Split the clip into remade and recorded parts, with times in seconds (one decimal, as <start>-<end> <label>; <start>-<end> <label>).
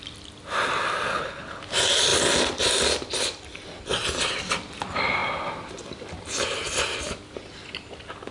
0.0-1.1 recorded; 1.1-1.6 remade; 1.6-8.3 recorded